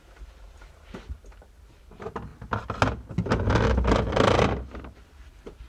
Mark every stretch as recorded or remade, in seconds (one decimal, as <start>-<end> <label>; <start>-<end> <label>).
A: 0.0-2.3 remade; 2.3-5.3 recorded; 5.3-5.7 remade